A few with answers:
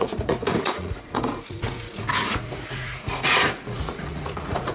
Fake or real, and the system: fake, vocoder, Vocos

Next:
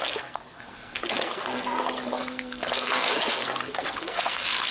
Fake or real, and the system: fake, codec, SNAC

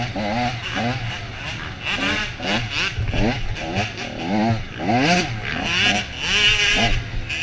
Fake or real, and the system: real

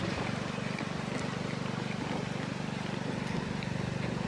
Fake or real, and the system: real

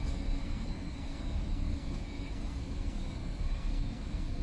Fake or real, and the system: fake, codec, SNAC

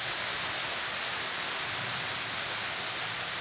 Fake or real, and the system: real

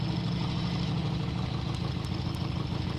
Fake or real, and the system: real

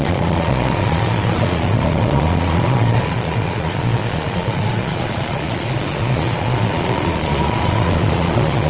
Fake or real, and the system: fake, vocoder, Vocos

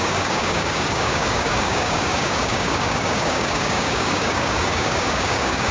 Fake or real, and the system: fake, codec, DAC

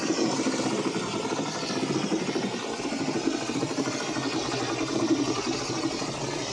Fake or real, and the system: real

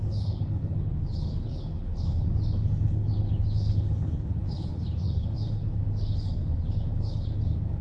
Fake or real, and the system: fake, codec, HILCodec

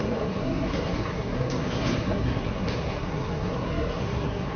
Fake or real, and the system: fake, codec, SNAC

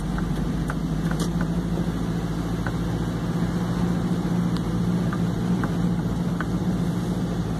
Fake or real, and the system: real